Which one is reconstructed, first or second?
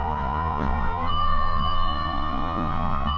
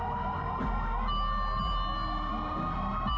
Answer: first